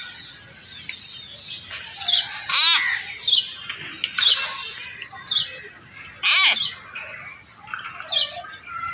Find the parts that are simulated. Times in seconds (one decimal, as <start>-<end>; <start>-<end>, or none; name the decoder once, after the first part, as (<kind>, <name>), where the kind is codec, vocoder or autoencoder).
none